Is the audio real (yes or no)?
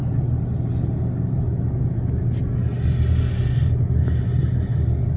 yes